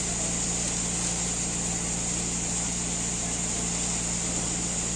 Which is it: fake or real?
real